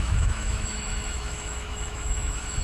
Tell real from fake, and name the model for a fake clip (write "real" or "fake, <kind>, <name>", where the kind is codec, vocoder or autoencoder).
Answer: fake, autoencoder, DAC-VAE